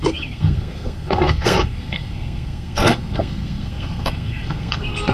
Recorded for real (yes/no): no